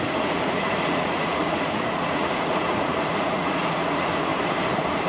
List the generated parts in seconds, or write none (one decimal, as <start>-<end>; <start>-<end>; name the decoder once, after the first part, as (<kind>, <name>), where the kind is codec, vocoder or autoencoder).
0.0-4.3 (vocoder, Vocos)